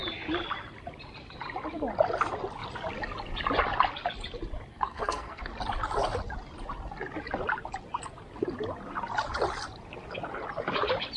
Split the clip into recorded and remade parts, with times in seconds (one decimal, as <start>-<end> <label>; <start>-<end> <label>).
0.0-4.7 recorded; 4.7-5.5 remade; 5.5-11.2 recorded

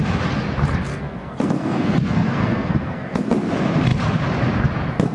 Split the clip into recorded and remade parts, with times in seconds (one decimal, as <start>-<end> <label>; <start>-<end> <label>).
0.0-0.9 recorded; 0.9-3.3 remade; 3.3-5.1 recorded